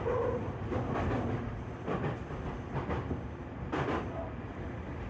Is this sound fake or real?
real